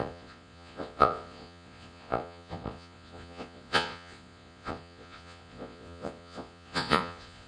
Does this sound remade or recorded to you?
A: remade